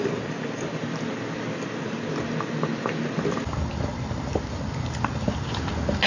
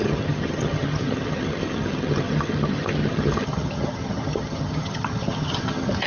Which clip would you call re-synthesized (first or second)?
second